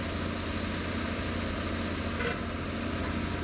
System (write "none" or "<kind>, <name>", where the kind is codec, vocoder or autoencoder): none